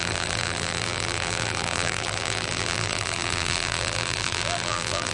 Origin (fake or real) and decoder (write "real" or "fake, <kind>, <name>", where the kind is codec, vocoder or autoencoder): fake, vocoder, BigVGAN v2